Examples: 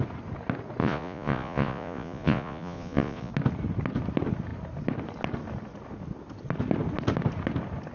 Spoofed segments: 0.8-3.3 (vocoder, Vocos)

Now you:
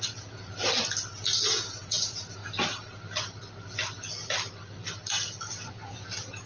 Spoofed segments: 0.0-0.5 (vocoder, Vocos); 1.5-2.4; 5.7-6.5

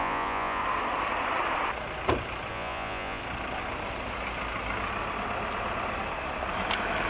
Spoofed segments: 0.0-0.6 (vocoder, Vocos); 2.5-3.2